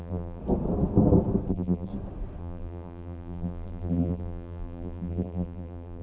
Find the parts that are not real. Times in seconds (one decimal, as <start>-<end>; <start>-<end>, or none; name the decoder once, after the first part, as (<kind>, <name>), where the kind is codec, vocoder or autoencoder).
0.0-0.4 (vocoder, BigVGAN v2); 1.5-1.9; 2.4-6.0